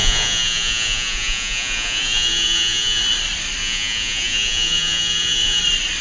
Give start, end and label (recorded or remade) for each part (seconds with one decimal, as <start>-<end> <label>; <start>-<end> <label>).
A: 0.0-3.0 remade; 3.0-3.6 recorded; 3.6-5.6 remade; 5.6-6.0 recorded